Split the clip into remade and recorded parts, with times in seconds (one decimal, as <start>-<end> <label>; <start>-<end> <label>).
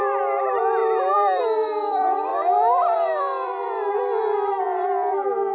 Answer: 0.0-5.5 remade